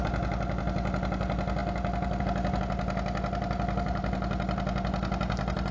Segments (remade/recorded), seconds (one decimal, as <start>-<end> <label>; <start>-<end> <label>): 0.0-5.7 recorded